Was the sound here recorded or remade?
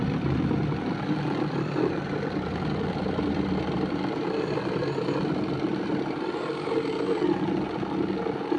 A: recorded